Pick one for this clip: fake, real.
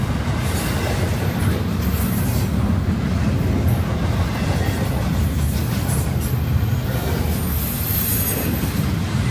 real